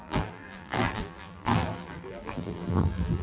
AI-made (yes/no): yes